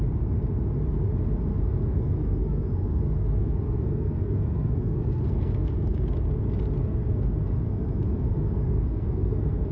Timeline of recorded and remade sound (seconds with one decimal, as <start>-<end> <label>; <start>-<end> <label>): 0.0-1.5 recorded; 1.5-6.3 remade; 6.3-6.8 recorded; 6.8-9.7 remade